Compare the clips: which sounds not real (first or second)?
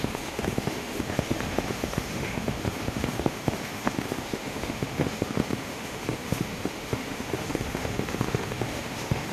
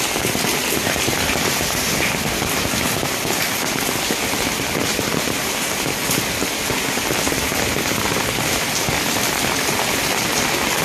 first